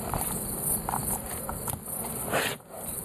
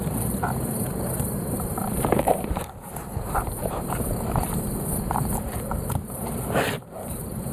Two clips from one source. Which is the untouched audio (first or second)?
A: first